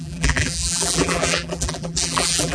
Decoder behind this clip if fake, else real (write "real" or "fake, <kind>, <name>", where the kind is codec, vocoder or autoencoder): fake, vocoder, BigVGAN v2